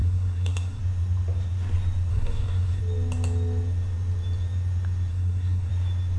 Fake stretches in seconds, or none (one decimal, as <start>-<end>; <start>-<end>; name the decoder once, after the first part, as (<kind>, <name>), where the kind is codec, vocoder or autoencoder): 0.0-0.8 (codec, SNAC); 2.1-2.8; 5.1-5.7